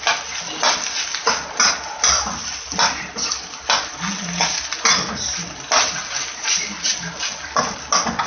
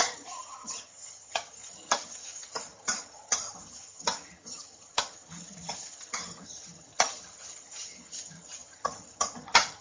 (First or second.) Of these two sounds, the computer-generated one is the second